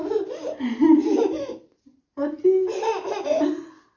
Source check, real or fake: real